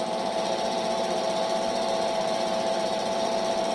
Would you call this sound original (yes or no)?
no